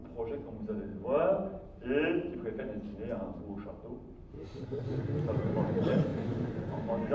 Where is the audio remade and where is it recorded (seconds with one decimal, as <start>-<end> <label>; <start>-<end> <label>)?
0.0-7.1 recorded